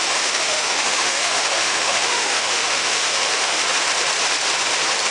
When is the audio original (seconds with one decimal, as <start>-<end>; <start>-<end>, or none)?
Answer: 3.6-5.1